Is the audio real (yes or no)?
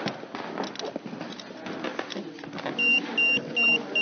yes